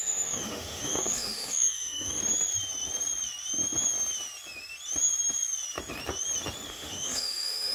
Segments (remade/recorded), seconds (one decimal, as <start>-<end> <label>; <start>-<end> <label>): 0.0-2.2 remade; 2.2-6.7 recorded; 6.7-7.7 remade